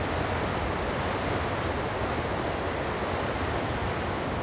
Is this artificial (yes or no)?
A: no